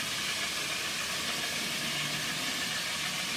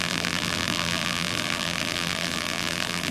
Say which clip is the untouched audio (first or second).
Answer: first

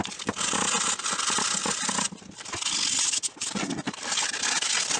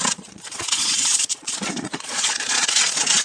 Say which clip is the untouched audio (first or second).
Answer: first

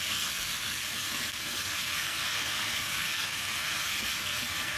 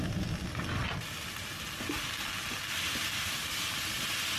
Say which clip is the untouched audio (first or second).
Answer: second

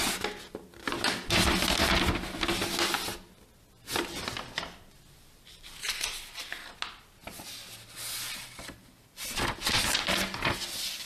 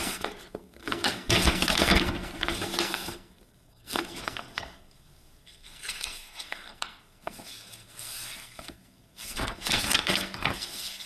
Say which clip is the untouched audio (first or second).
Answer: first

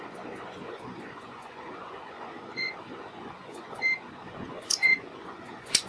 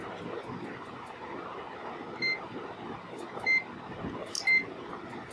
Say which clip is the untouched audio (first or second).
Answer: second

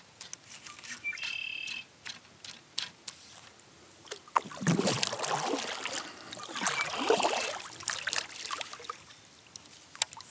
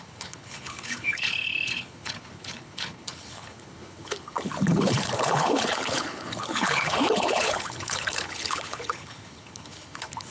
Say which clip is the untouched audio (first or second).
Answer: first